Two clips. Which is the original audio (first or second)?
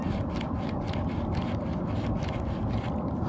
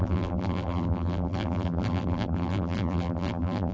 first